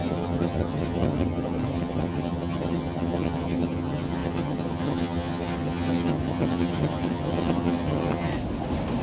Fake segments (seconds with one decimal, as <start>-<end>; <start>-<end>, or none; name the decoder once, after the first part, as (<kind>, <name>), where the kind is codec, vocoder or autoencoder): 0.0-8.3 (vocoder, HiFi-GAN)